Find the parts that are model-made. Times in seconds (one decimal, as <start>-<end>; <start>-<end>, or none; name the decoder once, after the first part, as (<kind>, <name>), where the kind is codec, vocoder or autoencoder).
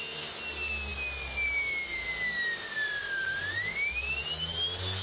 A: none